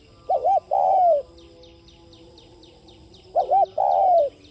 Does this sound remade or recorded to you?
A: recorded